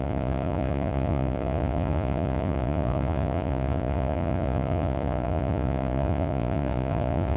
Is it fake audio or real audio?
fake